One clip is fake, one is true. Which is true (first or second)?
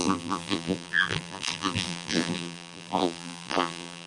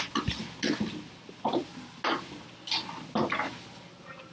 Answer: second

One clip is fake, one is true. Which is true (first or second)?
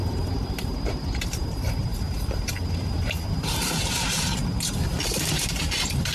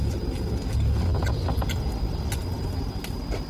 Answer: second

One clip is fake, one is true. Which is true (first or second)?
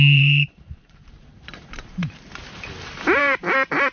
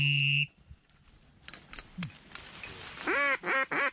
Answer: second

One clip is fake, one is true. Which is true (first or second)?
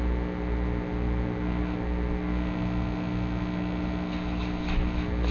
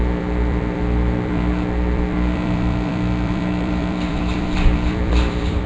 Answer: first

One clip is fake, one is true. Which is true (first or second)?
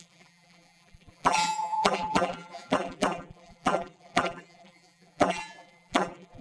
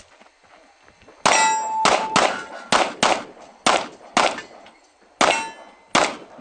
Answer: second